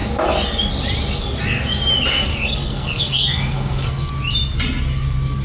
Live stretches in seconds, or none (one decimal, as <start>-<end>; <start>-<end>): 0.0-2.3; 4.1-5.4